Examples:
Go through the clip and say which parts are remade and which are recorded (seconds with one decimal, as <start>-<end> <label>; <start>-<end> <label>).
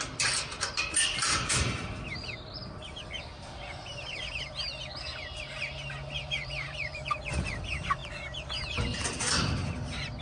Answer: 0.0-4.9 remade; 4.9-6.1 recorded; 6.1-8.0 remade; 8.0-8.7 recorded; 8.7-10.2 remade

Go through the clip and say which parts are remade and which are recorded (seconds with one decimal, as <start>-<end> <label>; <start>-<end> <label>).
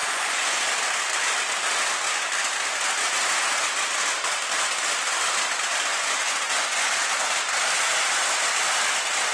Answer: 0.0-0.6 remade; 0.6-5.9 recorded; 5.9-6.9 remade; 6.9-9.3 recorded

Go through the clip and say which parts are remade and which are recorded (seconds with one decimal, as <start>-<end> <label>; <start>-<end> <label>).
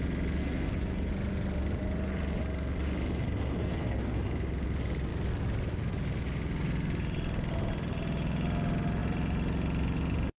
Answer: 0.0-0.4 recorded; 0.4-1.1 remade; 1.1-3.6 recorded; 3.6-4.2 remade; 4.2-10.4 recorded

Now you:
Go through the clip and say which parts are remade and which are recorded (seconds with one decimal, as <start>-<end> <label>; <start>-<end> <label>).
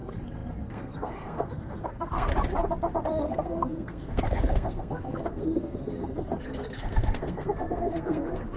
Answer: 0.0-2.3 remade; 2.3-3.2 recorded; 3.2-8.6 remade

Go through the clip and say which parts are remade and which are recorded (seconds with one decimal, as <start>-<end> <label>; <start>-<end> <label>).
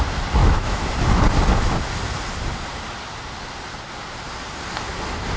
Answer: 0.0-0.4 recorded; 0.4-0.9 remade; 0.9-5.4 recorded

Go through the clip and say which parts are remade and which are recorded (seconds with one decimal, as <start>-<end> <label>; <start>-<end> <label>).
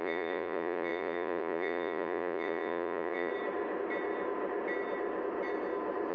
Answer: 0.0-3.3 remade; 3.3-6.1 recorded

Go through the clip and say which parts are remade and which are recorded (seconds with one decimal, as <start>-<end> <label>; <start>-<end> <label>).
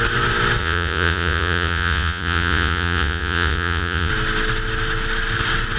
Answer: 0.0-0.6 recorded; 0.6-4.1 remade; 4.1-5.8 recorded